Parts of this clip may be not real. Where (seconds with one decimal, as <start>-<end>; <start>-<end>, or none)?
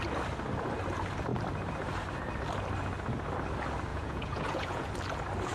3.9-4.9